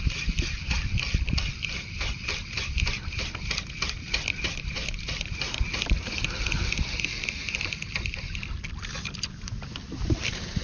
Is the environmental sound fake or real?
real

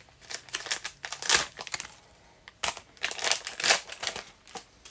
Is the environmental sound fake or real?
real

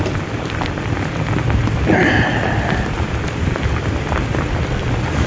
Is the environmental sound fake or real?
real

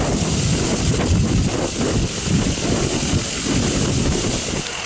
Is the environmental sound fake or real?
real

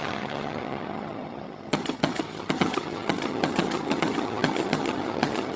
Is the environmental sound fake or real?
fake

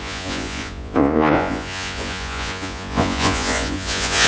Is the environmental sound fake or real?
fake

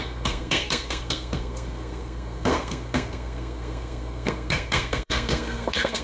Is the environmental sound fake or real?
fake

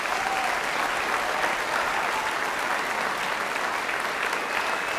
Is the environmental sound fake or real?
real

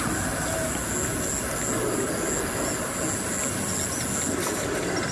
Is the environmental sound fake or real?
real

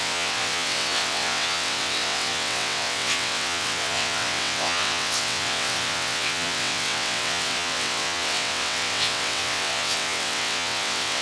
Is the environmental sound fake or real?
fake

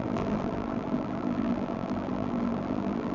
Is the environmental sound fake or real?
fake